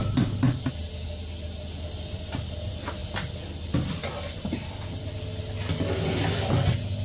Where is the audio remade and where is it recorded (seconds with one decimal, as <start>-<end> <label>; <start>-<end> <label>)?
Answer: 0.0-7.0 recorded